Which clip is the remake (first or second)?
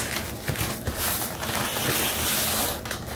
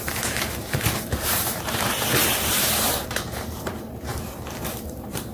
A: second